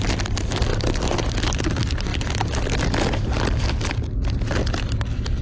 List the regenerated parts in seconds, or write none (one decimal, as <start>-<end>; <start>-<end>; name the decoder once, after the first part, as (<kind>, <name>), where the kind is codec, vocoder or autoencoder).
none